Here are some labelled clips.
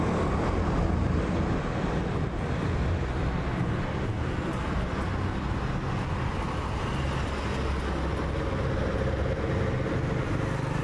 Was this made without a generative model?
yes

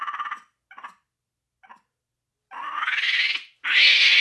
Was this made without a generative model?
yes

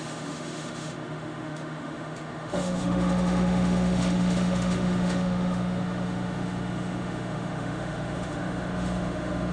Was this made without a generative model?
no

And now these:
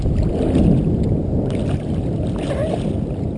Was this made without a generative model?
yes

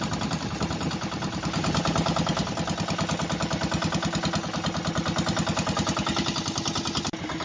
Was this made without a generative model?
yes